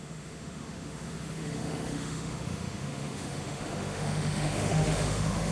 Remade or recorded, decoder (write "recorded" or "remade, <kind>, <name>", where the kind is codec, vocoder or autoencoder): remade, autoencoder, DAC-VAE